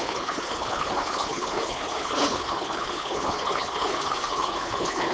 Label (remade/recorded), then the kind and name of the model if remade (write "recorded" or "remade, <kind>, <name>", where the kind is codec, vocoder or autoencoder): remade, codec, HILCodec